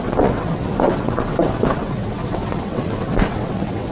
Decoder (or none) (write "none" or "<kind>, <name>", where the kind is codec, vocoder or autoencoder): vocoder, WaveNeXt